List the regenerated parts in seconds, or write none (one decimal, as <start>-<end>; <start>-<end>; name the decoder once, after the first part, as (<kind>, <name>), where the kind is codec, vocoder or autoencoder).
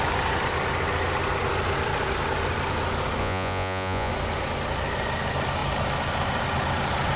3.2-4.1 (vocoder, Vocos)